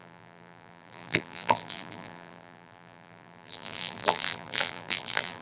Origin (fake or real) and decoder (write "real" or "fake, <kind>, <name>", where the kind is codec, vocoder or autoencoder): fake, vocoder, BigVGAN v2